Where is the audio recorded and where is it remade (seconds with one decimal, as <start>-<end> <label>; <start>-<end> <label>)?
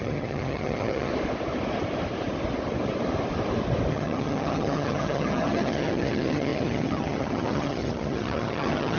0.0-1.1 remade; 1.1-3.9 recorded; 3.9-9.0 remade